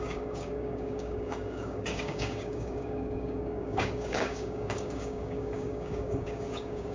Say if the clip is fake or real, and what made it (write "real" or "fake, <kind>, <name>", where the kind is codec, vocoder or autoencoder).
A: fake, codec, DAC